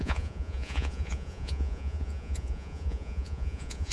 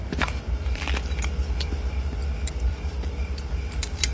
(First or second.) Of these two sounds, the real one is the second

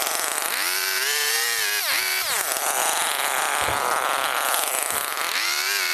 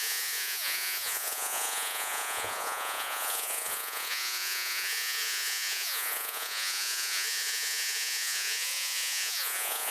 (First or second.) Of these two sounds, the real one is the first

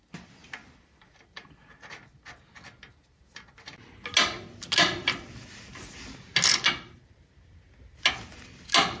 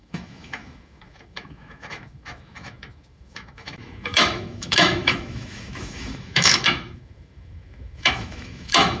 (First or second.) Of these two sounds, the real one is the first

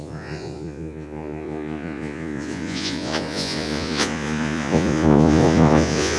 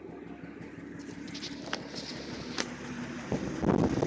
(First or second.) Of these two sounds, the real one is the second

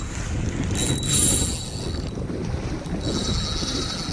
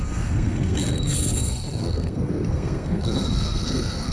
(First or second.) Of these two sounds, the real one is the first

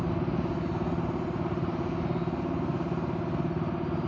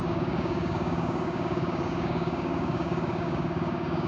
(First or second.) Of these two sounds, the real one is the first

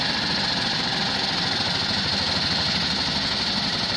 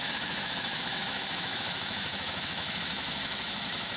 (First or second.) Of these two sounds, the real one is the first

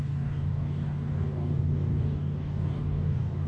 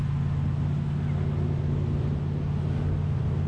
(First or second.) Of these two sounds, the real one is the second